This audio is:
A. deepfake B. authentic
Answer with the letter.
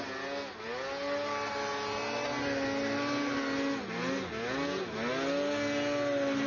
B